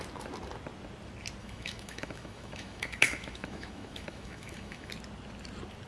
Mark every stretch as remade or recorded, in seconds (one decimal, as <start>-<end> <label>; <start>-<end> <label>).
0.0-1.4 recorded; 1.4-4.9 remade; 4.9-5.9 recorded